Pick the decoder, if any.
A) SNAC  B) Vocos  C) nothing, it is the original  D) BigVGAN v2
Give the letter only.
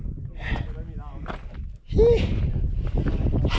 C